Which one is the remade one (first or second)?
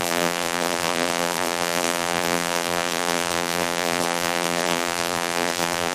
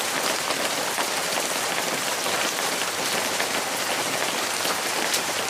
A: first